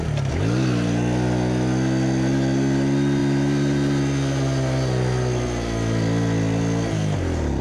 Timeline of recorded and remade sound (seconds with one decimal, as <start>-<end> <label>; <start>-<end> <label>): 0.0-7.6 recorded